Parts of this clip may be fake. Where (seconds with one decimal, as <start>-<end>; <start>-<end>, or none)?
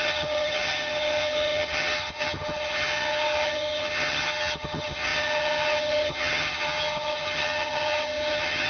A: 0.0-8.7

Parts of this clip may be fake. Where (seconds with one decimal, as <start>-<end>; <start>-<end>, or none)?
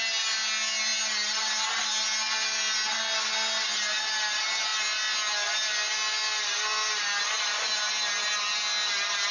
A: none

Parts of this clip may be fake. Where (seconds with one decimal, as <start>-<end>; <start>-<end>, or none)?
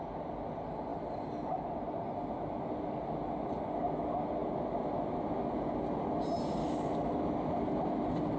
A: 6.6-7.6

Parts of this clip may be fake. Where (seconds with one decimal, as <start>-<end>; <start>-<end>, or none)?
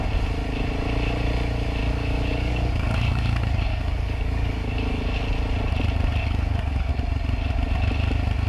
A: 1.8-5.0; 6.2-6.9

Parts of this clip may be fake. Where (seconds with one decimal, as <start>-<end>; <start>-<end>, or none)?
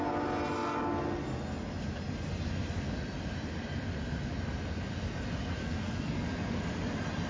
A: 5.6-6.2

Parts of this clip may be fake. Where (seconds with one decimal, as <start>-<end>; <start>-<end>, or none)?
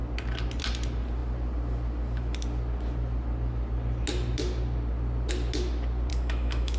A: 6.1-6.8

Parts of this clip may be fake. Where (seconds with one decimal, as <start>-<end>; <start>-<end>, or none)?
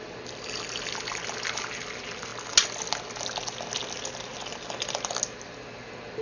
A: none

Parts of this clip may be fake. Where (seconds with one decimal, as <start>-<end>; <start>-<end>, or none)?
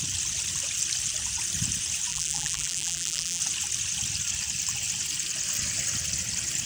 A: 2.1-3.4